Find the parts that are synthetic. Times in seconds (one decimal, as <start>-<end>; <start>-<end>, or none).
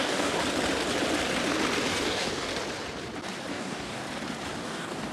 0.0-0.4; 1.9-2.5; 3.5-4.0; 4.6-5.1